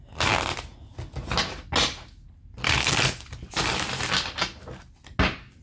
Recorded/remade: recorded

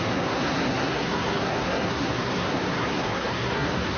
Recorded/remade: remade